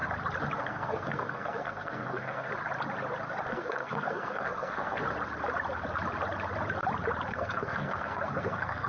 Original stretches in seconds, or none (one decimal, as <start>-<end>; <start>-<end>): 0.0-0.6; 2.5-3.5; 5.0-7.3